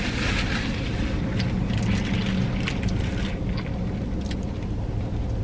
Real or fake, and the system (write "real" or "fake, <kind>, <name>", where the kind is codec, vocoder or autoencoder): real